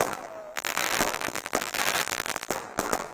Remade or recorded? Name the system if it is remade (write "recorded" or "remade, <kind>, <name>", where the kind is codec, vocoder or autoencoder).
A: remade, vocoder, BigVGAN v2